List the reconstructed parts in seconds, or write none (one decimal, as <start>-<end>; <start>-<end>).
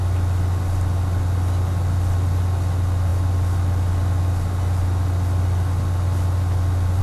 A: none